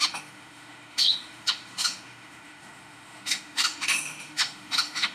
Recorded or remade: remade